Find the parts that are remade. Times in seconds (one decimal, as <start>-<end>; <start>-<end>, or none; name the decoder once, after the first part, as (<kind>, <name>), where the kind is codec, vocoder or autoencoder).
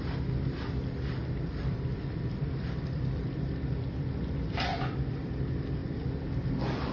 1.2-5.3 (vocoder, BigVGAN v2)